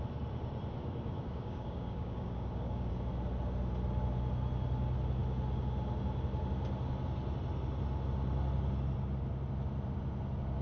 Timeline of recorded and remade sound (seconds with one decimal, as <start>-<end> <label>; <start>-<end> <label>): 0.0-0.8 recorded; 0.8-2.9 remade; 2.9-10.6 recorded